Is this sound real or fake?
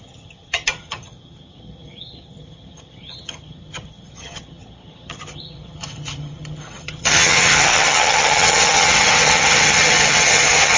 fake